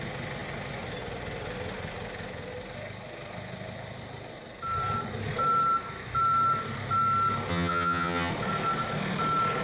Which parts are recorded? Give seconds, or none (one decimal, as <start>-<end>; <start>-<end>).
0.0-7.5; 8.3-9.6